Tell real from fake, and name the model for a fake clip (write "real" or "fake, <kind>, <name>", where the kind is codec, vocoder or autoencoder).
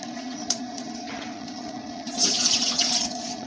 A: fake, vocoder, Vocos